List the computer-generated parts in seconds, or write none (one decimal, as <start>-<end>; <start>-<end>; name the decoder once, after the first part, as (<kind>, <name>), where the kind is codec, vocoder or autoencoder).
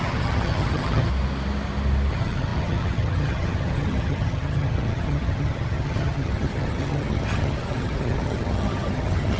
0.0-1.1 (vocoder, HiFi-GAN); 2.1-9.4